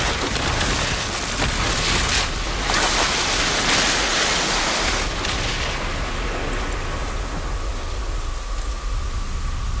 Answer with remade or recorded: recorded